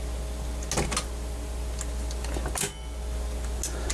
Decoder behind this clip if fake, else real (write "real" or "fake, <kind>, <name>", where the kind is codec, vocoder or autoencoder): real